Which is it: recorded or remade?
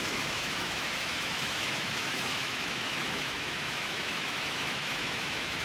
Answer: remade